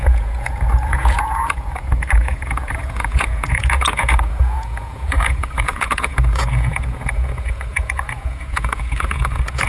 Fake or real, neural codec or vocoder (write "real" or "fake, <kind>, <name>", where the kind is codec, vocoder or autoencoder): fake, vocoder, Vocos